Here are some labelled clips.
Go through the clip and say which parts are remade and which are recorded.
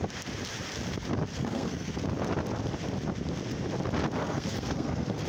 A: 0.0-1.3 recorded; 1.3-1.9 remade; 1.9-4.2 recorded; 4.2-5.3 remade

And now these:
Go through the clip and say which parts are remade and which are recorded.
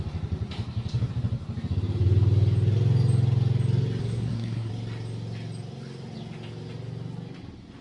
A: 0.0-4.0 recorded; 4.0-4.7 remade; 4.7-7.8 recorded